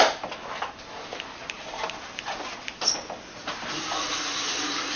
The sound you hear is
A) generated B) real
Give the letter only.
B